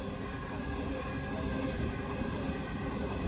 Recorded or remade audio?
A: recorded